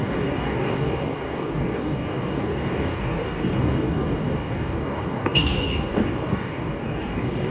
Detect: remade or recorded remade